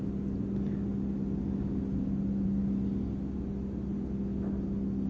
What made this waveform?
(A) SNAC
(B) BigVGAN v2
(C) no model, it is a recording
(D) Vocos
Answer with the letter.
C